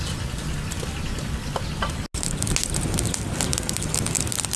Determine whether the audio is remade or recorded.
recorded